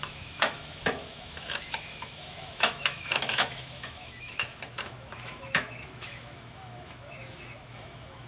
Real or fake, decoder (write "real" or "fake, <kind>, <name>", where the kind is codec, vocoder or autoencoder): fake, autoencoder, DAC-VAE